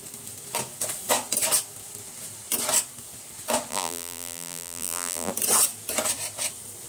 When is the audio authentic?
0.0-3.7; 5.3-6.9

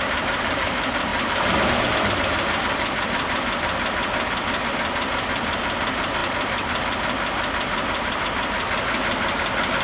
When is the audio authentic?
0.0-6.2; 8.2-9.8

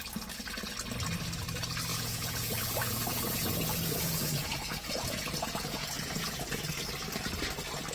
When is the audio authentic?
0.0-1.9; 6.6-7.9

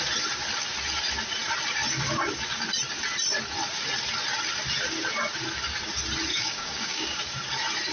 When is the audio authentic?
0.0-6.3; 7.2-7.9